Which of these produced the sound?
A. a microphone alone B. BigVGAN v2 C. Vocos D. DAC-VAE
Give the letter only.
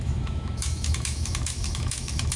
D